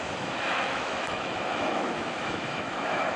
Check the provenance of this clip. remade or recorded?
remade